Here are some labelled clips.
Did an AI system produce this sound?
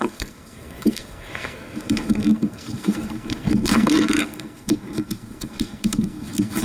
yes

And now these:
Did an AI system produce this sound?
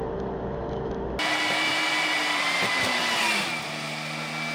no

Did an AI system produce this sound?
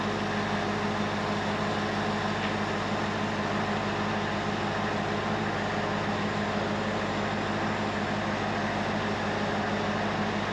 no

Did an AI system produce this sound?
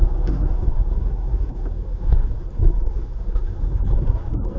yes